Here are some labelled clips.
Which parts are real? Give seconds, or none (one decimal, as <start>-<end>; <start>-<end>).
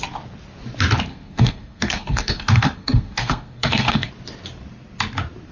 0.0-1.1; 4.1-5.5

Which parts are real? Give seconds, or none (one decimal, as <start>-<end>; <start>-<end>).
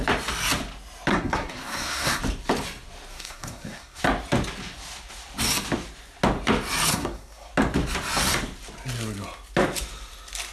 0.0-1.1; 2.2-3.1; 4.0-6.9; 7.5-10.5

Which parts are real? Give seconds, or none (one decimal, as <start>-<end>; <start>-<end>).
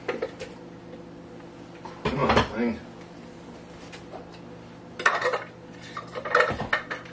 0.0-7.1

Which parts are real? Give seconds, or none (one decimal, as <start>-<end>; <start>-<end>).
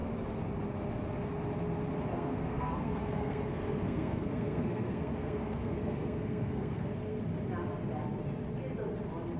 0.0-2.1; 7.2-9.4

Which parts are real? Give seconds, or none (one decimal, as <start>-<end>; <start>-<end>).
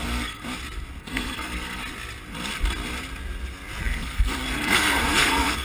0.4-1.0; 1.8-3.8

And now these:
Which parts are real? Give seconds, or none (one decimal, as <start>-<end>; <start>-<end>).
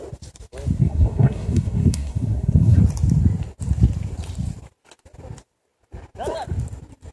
0.0-0.8; 2.8-7.1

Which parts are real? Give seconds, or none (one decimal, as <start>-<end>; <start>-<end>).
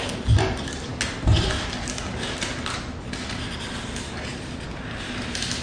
0.0-5.6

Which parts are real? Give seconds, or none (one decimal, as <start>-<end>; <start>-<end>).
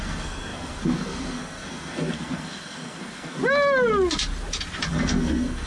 3.4-4.9